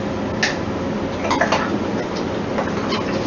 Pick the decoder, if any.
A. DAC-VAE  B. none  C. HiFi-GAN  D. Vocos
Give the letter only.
B